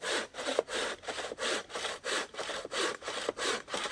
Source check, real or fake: real